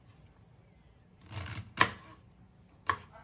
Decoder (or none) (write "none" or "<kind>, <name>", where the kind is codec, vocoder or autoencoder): none